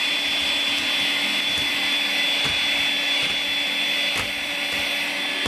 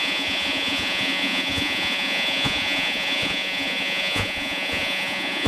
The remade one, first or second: second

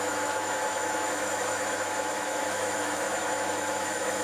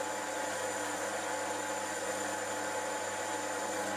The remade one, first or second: first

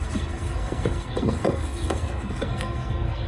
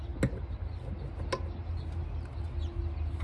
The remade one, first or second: first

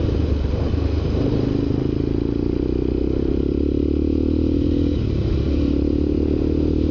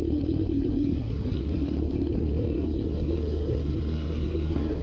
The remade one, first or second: second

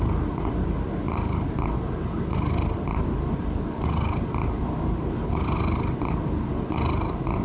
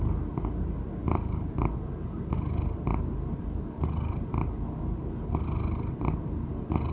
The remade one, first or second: first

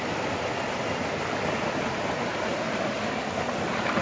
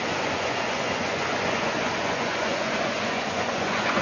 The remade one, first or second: second